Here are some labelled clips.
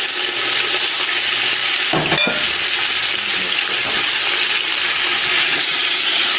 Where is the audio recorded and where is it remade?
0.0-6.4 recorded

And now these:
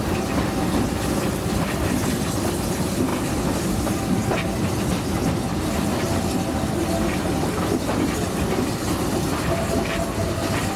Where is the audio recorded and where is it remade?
0.0-10.8 recorded

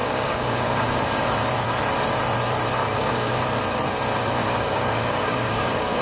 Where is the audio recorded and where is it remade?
0.0-1.0 remade; 1.0-2.8 recorded; 2.8-3.3 remade; 3.3-4.4 recorded; 4.4-6.0 remade

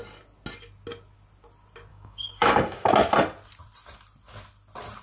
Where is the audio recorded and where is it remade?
0.0-1.9 recorded; 1.9-2.9 remade; 2.9-5.0 recorded

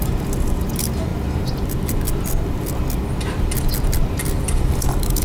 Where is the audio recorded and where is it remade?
0.0-5.2 recorded